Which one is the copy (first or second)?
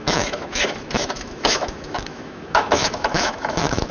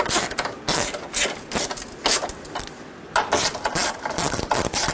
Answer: first